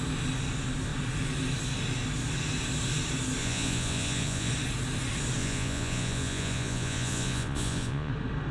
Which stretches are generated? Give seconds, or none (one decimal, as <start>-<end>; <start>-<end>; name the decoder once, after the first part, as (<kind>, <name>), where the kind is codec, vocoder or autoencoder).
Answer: 3.4-4.5 (vocoder, Vocos); 5.4-8.1